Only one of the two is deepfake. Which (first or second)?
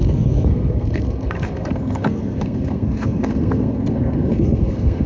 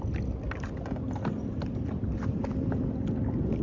first